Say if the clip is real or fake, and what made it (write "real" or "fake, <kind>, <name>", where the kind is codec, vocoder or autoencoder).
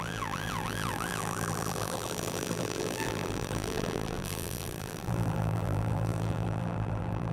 fake, vocoder, BigVGAN v2